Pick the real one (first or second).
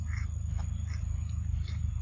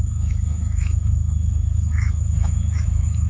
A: first